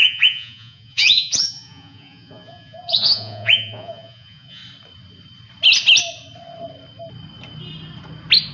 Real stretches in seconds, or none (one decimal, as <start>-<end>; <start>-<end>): 4.6-8.5